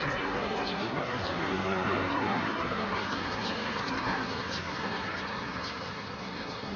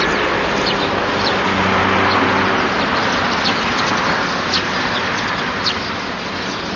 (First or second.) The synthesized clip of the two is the first